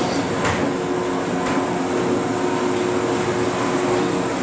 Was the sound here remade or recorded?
recorded